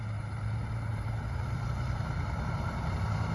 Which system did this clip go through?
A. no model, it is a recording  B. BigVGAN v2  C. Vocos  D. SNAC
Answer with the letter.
B